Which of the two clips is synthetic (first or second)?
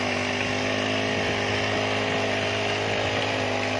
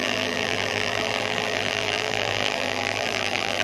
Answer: second